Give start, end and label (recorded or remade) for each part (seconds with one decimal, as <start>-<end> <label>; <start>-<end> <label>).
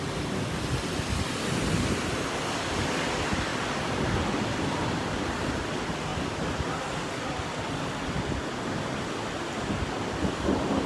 0.0-10.9 recorded